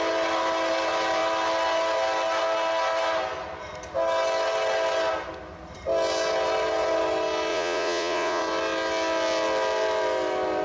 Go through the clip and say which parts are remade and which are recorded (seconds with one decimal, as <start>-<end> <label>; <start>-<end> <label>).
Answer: 0.0-7.5 recorded; 7.5-8.4 remade; 8.4-10.6 recorded